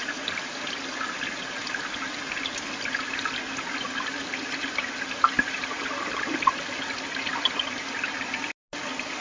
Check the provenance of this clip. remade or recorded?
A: recorded